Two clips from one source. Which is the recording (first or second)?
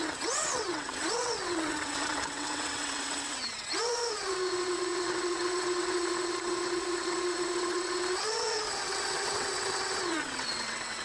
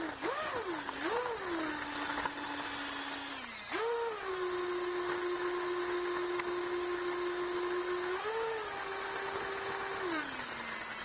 second